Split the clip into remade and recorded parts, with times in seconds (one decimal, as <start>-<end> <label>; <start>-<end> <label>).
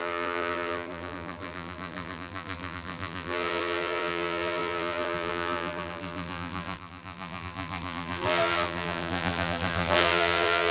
0.0-10.7 remade